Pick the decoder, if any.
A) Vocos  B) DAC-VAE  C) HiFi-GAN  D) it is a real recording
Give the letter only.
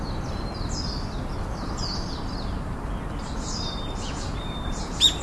D